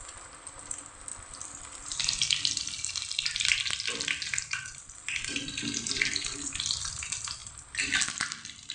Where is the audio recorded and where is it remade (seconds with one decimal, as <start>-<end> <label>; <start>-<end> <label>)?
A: 0.0-7.4 remade; 7.4-8.1 recorded; 8.1-8.7 remade